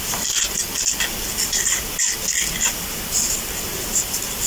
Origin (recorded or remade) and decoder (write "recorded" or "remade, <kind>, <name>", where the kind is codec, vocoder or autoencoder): recorded